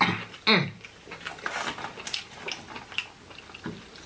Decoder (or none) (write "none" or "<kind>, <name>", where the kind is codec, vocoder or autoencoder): none